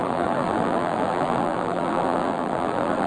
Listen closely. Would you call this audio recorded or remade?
remade